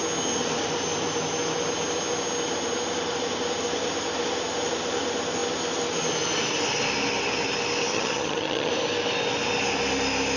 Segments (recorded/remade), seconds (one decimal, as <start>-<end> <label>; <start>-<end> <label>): 0.0-7.9 recorded; 7.9-8.7 remade; 8.7-10.4 recorded